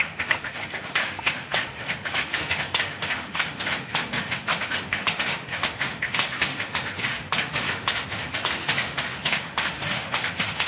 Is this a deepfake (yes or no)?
yes